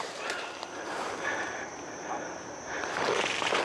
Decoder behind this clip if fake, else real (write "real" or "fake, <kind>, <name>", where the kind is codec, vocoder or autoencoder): fake, vocoder, BigVGAN v2